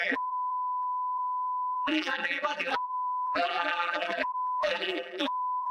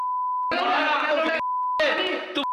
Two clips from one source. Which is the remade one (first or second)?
first